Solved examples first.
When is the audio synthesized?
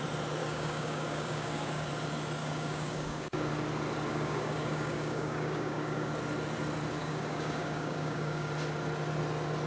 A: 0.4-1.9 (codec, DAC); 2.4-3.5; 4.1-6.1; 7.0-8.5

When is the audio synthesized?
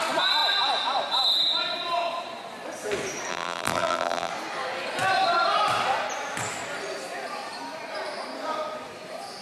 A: 3.3-4.3 (vocoder, BigVGAN v2)